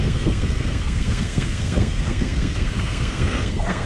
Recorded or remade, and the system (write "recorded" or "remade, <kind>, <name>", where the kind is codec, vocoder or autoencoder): remade, codec, SNAC